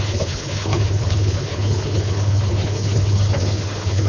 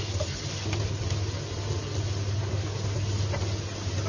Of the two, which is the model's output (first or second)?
first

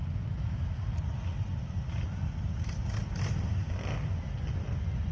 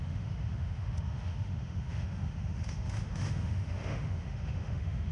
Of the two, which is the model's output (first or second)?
second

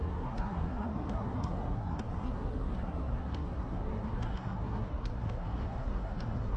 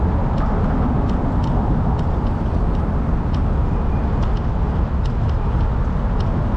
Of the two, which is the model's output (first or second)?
first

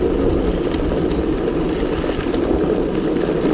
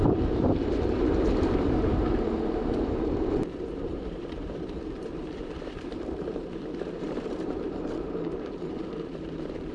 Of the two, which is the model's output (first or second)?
second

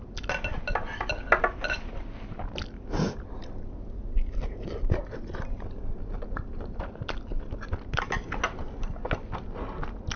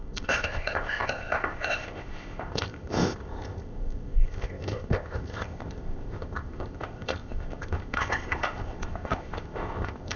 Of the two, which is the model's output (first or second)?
second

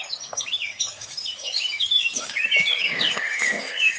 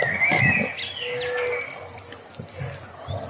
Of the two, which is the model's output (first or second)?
first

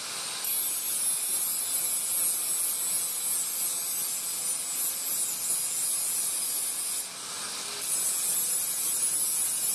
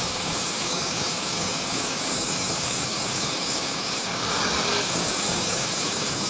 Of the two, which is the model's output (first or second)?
second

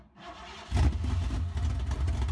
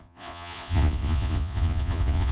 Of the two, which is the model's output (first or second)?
second